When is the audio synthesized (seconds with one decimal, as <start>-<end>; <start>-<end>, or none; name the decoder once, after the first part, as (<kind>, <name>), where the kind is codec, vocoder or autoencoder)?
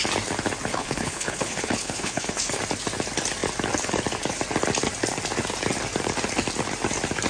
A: 0.7-2.6 (codec, HILCodec)